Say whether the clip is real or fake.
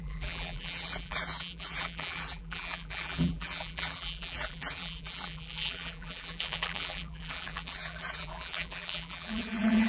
fake